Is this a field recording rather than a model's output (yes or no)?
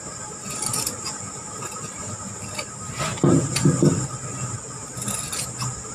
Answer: yes